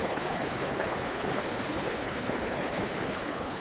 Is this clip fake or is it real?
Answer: fake